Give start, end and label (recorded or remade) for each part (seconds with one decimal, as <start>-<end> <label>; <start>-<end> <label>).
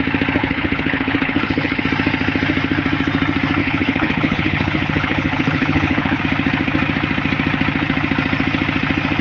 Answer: 0.0-0.4 recorded; 0.4-1.8 remade; 1.8-3.6 recorded; 3.6-6.2 remade; 6.2-9.2 recorded